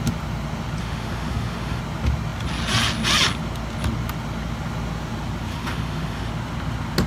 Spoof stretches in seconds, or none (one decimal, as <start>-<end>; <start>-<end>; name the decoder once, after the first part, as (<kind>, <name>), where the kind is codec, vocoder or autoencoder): 0.8-1.8 (autoencoder, DAC-VAE); 5.5-6.3